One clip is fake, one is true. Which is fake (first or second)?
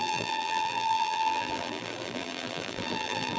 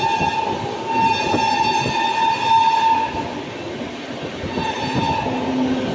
first